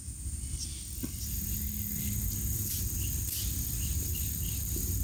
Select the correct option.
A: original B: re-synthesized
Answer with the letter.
A